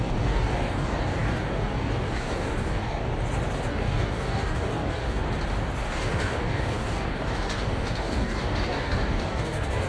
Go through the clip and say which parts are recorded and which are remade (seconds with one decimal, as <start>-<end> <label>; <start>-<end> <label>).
0.0-3.1 remade; 3.1-3.7 recorded; 3.7-5.2 remade; 5.2-5.8 recorded; 5.8-9.9 remade